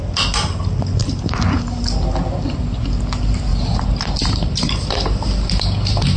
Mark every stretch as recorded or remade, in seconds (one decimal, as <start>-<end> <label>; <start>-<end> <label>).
0.0-1.0 recorded; 1.0-1.8 remade; 1.8-3.5 recorded; 3.5-4.9 remade; 4.9-6.2 recorded